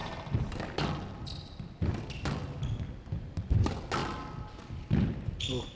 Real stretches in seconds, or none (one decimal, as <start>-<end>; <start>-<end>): 0.0-5.8